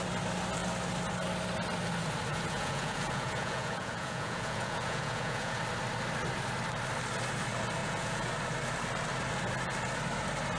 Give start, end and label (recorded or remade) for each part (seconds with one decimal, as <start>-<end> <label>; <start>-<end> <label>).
0.0-2.3 recorded; 2.3-5.6 remade; 5.6-7.8 recorded; 7.8-8.3 remade; 8.3-10.6 recorded